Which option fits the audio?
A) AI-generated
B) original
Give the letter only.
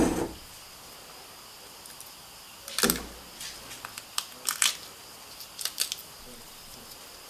B